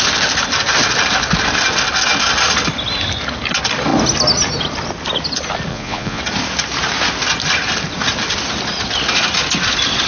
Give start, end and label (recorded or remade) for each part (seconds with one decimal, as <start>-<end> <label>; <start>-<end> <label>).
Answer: 0.0-5.7 recorded; 5.7-6.2 remade; 6.2-10.1 recorded